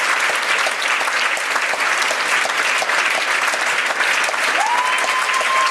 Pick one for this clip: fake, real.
real